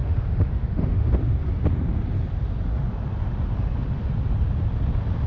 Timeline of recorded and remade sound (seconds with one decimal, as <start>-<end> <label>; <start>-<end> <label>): 0.0-1.1 remade; 1.1-5.3 recorded